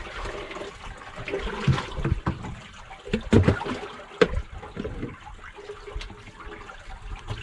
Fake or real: real